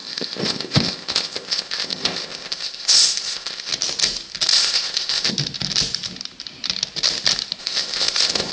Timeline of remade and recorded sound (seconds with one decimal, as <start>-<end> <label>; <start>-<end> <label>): 0.0-3.7 remade; 3.7-4.5 recorded; 4.5-5.3 remade; 5.3-7.6 recorded; 7.6-8.5 remade